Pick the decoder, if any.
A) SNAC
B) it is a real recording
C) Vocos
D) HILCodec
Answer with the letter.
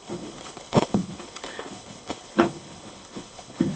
D